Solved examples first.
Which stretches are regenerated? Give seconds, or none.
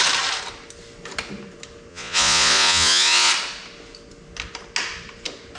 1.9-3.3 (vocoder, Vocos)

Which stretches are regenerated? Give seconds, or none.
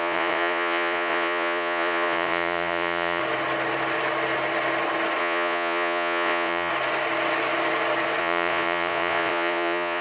0.0-3.2 (vocoder, Vocos); 5.2-6.7; 8.2-10.0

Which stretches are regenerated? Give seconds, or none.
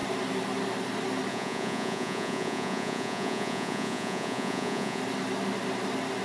1.3-5.0 (vocoder, Vocos)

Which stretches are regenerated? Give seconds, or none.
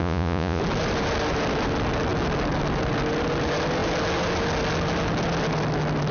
0.0-0.6 (vocoder, Vocos)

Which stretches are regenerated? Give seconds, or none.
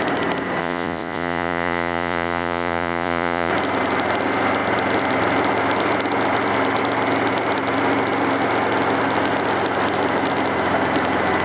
0.6-3.5 (vocoder, Vocos)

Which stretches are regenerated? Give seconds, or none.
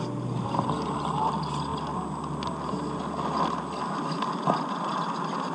none